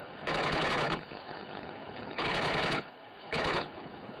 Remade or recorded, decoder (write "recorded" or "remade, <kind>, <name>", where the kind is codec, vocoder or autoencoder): remade, codec, HILCodec